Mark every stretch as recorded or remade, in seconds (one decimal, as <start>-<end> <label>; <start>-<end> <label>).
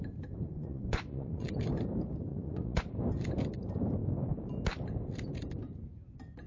0.0-0.5 recorded; 0.5-1.6 remade; 1.6-2.3 recorded; 2.3-2.8 remade; 2.8-6.5 recorded